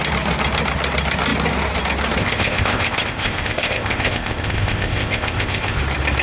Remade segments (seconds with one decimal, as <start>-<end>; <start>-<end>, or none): 2.2-5.8